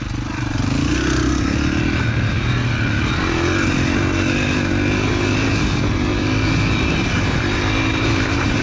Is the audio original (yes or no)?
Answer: yes